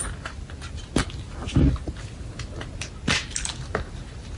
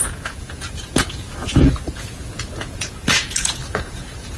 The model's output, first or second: second